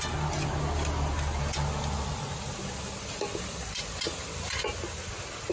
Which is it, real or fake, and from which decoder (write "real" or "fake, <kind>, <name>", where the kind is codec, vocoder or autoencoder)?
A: real